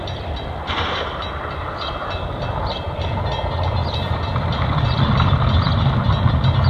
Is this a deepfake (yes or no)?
yes